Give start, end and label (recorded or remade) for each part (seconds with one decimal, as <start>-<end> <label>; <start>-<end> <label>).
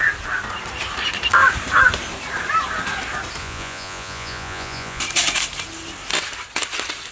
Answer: 0.0-3.4 recorded; 3.4-5.0 remade; 5.0-7.1 recorded